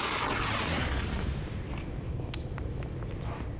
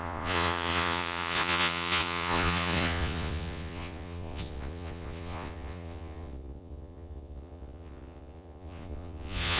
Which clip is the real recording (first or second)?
first